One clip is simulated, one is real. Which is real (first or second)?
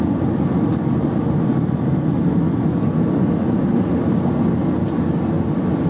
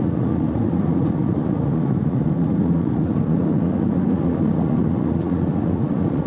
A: first